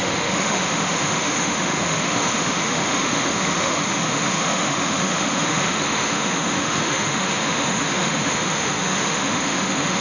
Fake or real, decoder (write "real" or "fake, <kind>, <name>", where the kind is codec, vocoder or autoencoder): fake, autoencoder, DAC-VAE